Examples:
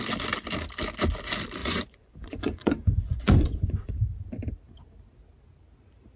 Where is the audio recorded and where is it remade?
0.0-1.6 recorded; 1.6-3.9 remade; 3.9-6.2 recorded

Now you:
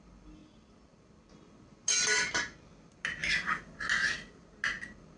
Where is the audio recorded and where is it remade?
0.0-5.2 recorded